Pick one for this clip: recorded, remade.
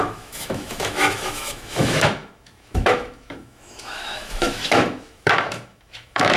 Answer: remade